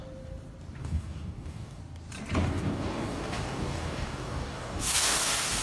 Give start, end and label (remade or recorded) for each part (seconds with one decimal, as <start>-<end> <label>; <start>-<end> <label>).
0.0-0.8 recorded; 0.8-1.8 remade; 1.8-2.4 recorded; 2.4-5.6 remade